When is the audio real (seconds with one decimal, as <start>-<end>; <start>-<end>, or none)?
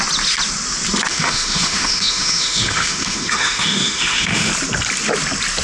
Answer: 0.0-1.1; 4.5-5.6